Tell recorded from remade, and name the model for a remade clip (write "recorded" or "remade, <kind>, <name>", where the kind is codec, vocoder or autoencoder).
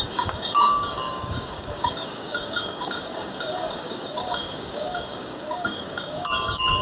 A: remade, codec, DAC